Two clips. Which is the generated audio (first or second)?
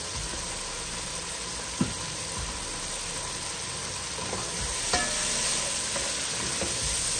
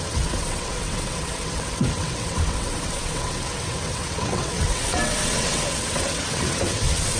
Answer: second